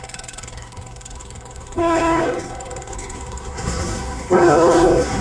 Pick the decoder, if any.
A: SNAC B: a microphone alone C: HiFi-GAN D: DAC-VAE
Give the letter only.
A